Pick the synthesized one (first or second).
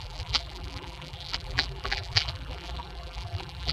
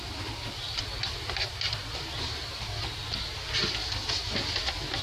first